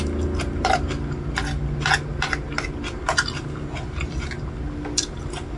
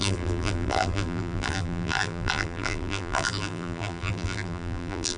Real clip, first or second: first